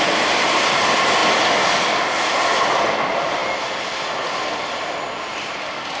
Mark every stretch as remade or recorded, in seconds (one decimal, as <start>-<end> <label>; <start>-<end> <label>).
0.0-3.4 recorded; 3.4-6.0 remade